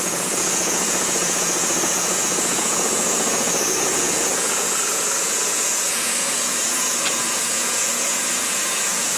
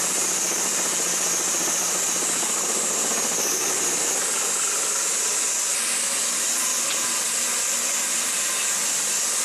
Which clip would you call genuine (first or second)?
second